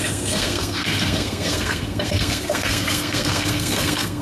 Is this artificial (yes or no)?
yes